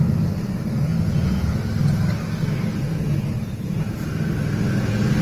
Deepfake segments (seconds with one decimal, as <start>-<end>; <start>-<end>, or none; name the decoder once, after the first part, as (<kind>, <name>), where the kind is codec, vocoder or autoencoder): 0.9-1.5 (vocoder, Vocos); 2.7-4.1